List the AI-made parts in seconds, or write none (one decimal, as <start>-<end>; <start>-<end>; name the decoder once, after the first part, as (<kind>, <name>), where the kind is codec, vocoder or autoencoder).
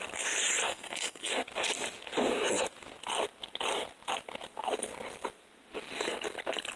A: 0.6-1.3 (codec, SNAC)